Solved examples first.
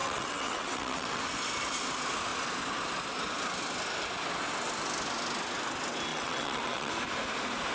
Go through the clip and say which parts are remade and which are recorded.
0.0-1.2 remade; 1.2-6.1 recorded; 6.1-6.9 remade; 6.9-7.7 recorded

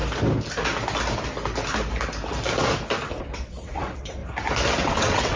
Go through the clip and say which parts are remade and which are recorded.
0.0-3.2 recorded; 3.2-4.2 remade; 4.2-4.8 recorded; 4.8-5.4 remade

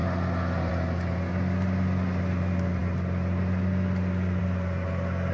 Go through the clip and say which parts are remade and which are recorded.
0.0-5.3 recorded

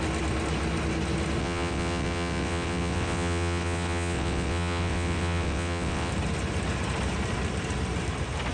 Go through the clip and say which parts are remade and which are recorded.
0.0-1.4 recorded; 1.4-6.1 remade; 6.1-8.5 recorded